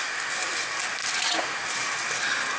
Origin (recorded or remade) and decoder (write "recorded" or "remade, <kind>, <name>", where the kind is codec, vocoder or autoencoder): recorded